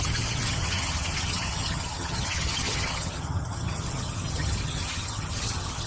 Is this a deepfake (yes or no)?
yes